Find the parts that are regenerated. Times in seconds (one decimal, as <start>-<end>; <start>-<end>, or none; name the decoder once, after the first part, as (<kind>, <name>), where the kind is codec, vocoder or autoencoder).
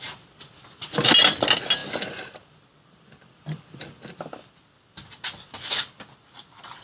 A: none